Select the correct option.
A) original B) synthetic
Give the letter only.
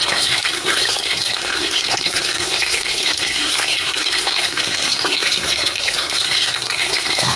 B